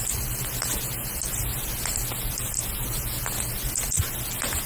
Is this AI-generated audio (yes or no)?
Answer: no